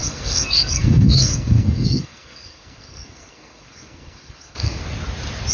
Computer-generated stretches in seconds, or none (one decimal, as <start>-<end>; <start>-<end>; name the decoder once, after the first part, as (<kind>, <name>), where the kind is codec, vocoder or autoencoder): 0.0-4.8 (codec, SNAC)